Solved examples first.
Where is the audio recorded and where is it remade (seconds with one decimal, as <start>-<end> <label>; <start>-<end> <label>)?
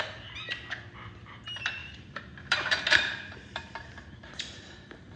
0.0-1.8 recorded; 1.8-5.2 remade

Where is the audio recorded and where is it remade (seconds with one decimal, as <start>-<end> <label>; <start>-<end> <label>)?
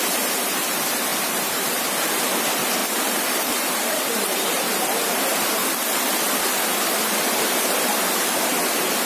0.0-1.1 recorded; 1.1-2.1 remade; 2.1-2.8 recorded; 2.8-4.7 remade; 4.7-9.1 recorded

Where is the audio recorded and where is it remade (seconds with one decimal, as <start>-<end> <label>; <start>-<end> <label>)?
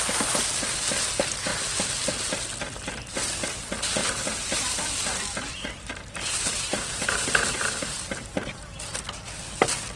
0.0-4.0 recorded; 4.0-8.8 remade; 8.8-10.0 recorded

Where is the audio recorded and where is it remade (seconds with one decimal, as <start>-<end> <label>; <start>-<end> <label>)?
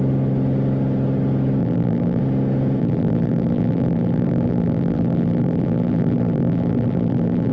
0.0-1.6 recorded; 1.6-2.2 remade; 2.2-2.8 recorded; 2.8-7.5 remade